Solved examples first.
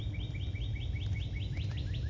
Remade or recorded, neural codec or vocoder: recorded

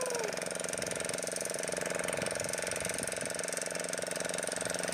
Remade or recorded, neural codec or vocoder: recorded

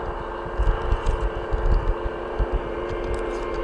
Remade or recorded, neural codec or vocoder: recorded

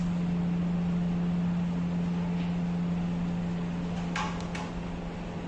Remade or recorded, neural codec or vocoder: recorded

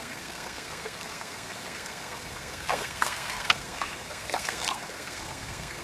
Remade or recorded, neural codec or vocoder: remade, codec, SNAC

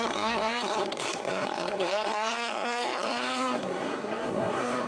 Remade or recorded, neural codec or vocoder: remade, codec, SNAC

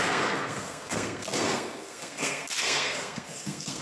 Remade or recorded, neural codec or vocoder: remade, codec, SNAC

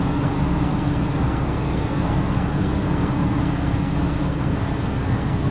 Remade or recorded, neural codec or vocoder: remade, codec, SNAC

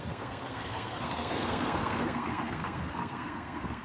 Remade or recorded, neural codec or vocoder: remade, codec, SNAC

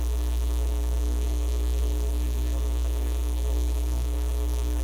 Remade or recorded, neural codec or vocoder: remade, codec, SNAC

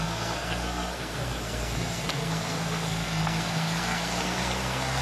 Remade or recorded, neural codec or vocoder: remade, codec, SNAC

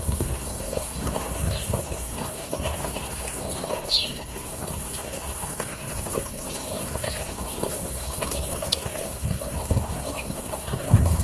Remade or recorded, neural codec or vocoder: remade, codec, SNAC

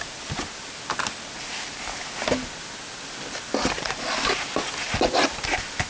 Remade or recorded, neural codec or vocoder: recorded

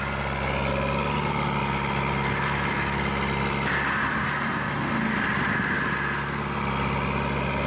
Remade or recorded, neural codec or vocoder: recorded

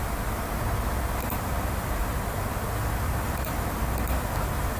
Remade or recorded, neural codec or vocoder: recorded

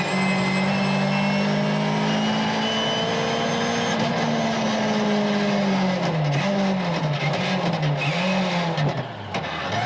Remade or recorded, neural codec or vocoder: recorded